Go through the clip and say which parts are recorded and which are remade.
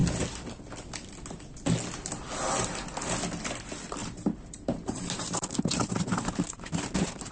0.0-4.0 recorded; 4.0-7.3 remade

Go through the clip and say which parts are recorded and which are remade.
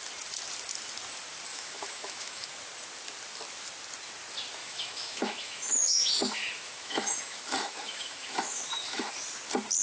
0.0-1.5 recorded; 1.5-2.5 remade; 2.5-4.6 recorded; 4.6-9.1 remade; 9.1-9.8 recorded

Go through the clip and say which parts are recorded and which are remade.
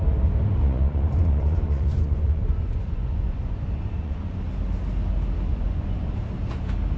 0.0-0.6 recorded; 0.6-4.4 remade; 4.4-5.5 recorded; 5.5-6.1 remade; 6.1-7.0 recorded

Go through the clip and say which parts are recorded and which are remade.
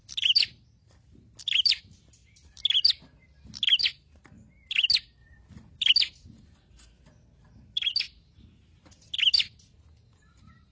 0.0-2.2 recorded; 2.2-3.8 remade; 3.8-5.2 recorded; 5.2-5.9 remade; 5.9-10.7 recorded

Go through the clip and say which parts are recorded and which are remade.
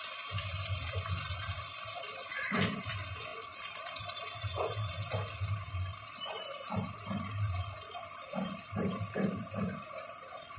0.0-10.6 recorded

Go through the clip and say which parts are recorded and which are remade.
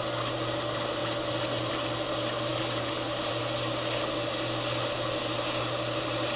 0.0-6.4 recorded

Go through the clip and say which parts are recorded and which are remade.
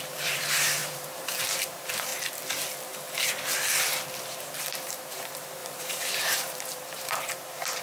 0.0-2.1 remade; 2.1-4.6 recorded; 4.6-7.8 remade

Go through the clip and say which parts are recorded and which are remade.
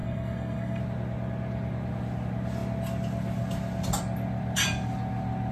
0.0-0.8 remade; 0.8-5.5 recorded